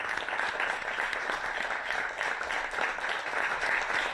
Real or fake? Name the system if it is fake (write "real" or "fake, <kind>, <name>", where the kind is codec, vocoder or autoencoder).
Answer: real